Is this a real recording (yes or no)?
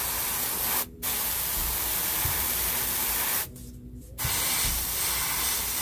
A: yes